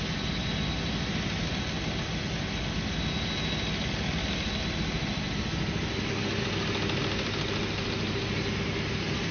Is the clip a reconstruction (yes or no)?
no